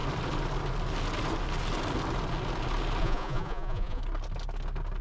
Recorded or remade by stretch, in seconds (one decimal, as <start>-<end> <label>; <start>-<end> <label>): 0.0-3.0 recorded; 3.0-4.0 remade; 4.0-5.0 recorded